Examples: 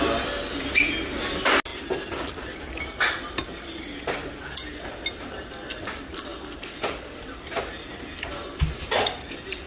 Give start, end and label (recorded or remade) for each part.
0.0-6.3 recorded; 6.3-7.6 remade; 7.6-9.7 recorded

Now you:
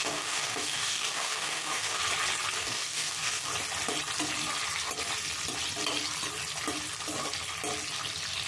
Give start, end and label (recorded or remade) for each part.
0.0-2.0 remade; 2.0-2.6 recorded; 2.6-3.5 remade; 3.5-8.5 recorded

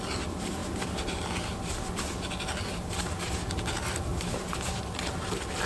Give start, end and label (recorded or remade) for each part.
0.0-4.1 recorded; 4.1-5.2 remade; 5.2-5.7 recorded

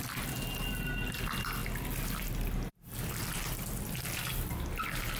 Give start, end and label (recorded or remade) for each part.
0.0-5.2 recorded